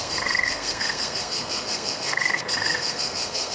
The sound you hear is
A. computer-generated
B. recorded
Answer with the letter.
A